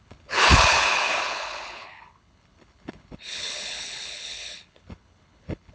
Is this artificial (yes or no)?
yes